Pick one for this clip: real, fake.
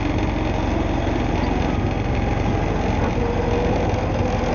real